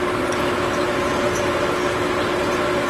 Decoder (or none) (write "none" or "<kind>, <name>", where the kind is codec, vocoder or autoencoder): none